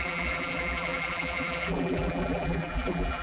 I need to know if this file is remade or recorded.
remade